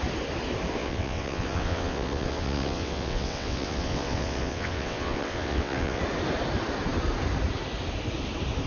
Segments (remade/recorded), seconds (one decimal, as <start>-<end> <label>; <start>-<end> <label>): 0.0-0.8 recorded; 0.8-6.0 remade; 6.0-8.7 recorded